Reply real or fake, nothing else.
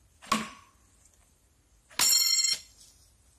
real